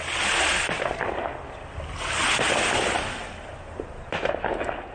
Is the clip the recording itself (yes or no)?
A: yes